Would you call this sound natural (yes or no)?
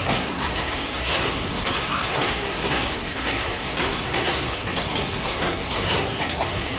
no